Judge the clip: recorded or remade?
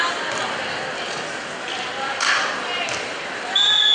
recorded